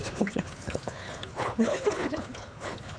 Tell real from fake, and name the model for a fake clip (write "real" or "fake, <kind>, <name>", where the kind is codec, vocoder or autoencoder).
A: fake, codec, HILCodec